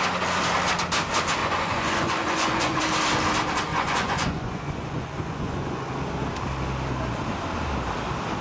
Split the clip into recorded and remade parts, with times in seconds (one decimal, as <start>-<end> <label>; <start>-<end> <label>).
0.0-1.4 recorded; 1.4-2.8 remade; 2.8-3.7 recorded; 3.7-5.9 remade; 5.9-8.4 recorded